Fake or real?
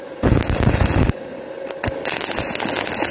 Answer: real